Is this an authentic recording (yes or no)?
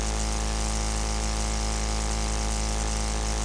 yes